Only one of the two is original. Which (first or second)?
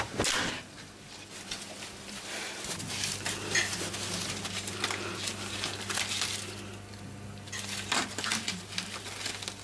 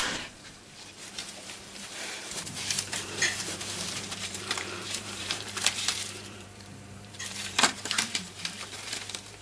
first